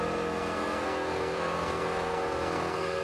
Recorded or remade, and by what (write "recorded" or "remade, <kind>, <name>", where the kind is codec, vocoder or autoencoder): remade, codec, SNAC